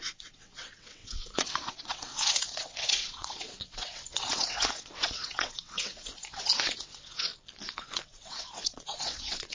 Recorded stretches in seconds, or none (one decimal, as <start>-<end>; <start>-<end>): 7.3-7.8

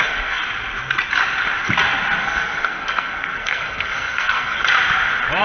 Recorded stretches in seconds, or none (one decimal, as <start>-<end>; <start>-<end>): 0.4-2.2; 4.6-5.4

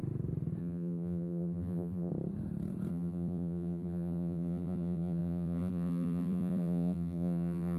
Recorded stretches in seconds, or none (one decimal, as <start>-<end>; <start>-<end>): 0.0-0.6; 2.1-2.9